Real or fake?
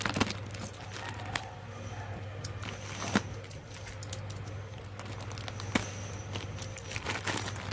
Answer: real